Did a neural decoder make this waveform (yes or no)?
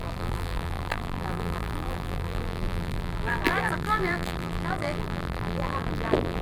yes